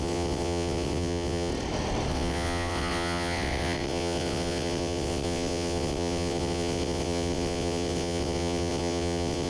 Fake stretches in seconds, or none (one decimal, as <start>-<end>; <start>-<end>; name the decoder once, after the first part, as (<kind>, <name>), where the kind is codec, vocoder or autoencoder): 0.0-1.5 (vocoder, WaveNeXt); 2.1-9.5